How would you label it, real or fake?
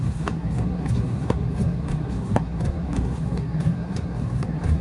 fake